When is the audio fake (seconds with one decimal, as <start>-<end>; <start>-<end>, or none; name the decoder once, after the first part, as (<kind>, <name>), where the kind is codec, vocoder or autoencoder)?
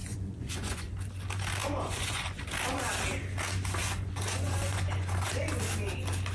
0.0-0.9 (vocoder, Vocos); 1.6-2.4; 3.8-5.3